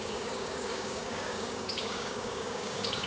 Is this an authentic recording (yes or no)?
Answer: no